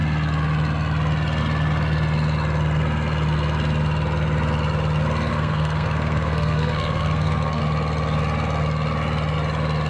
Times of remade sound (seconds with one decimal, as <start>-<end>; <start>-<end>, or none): 5.3-7.6